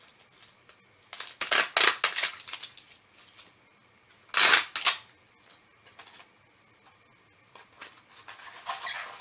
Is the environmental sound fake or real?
real